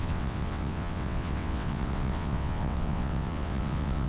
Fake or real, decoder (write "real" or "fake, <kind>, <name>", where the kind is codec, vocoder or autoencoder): fake, vocoder, WaveNeXt